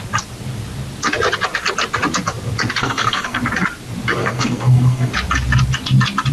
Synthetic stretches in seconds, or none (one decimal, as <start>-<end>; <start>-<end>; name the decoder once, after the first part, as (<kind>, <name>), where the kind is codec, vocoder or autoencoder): 2.8-3.4 (codec, SNAC); 4.2-5.1